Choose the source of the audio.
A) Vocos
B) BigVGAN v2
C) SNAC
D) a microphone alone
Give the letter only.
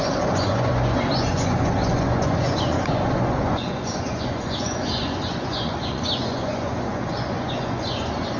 A